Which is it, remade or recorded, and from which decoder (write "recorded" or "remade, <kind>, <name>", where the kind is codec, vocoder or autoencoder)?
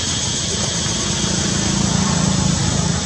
recorded